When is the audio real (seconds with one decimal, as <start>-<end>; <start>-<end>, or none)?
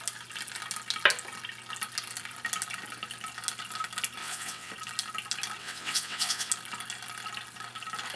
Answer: 0.0-4.2; 4.7-5.6; 6.5-8.2